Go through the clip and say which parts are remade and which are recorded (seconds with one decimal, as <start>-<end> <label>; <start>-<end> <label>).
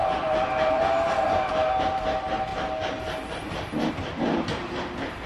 0.0-0.8 remade; 0.8-5.3 recorded